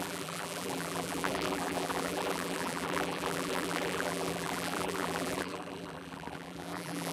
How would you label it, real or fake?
fake